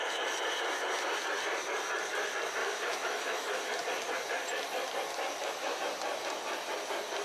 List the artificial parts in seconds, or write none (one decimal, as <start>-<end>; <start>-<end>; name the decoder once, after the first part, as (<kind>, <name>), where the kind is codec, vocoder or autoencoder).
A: 2.6-3.7 (autoencoder, DAC-VAE); 5.1-5.8